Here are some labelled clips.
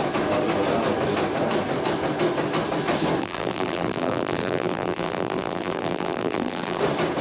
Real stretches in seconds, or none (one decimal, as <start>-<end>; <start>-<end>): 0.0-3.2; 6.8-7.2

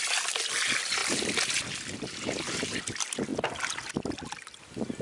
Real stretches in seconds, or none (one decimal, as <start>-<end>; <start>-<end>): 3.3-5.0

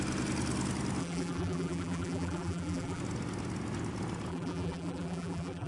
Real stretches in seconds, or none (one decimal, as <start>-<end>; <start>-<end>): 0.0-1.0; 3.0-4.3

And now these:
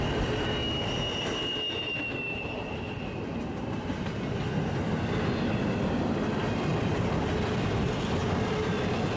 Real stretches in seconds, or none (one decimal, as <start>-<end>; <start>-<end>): 0.0-9.2

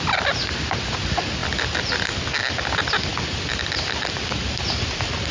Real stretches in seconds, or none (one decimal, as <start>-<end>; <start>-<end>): 0.0-3.1